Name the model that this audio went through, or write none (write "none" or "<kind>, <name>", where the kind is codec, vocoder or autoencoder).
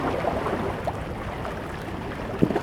none